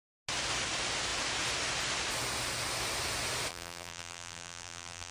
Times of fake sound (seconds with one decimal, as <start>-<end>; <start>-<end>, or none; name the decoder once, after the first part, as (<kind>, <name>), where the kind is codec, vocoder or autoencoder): 3.5-5.1 (vocoder, BigVGAN v2)